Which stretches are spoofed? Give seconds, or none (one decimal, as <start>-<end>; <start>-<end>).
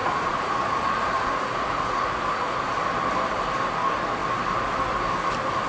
0.0-2.6